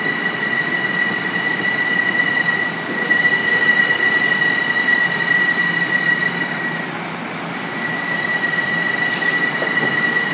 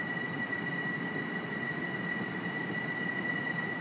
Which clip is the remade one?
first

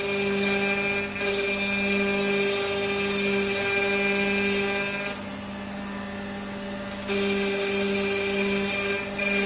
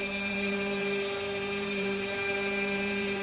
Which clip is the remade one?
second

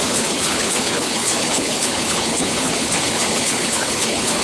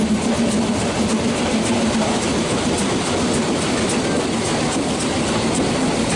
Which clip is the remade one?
first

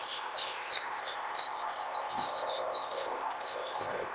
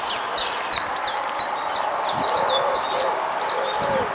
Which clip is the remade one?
first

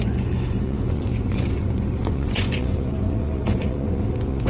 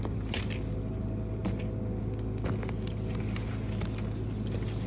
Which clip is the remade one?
first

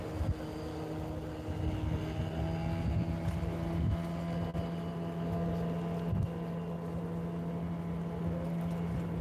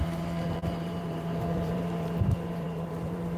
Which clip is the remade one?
second